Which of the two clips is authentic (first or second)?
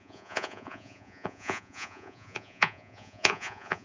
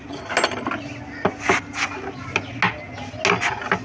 second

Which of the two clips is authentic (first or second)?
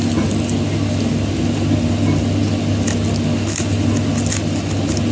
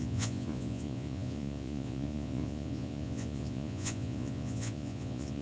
first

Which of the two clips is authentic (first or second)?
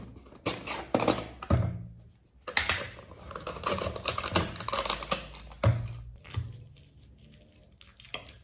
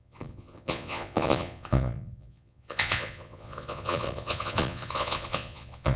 first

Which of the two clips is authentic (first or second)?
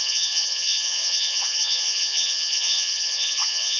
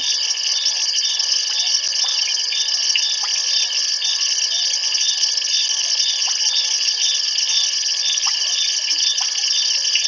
second